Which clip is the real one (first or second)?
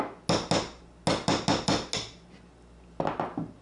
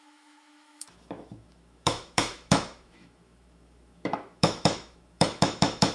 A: first